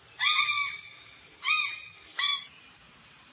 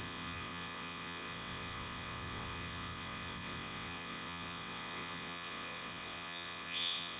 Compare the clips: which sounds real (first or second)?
first